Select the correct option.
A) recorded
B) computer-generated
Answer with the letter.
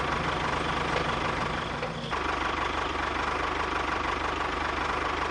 A